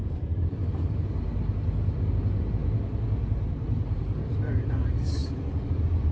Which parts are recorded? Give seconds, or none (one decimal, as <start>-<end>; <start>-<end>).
1.3-2.2